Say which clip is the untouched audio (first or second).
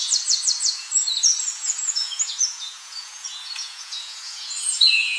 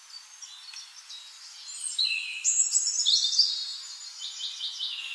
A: second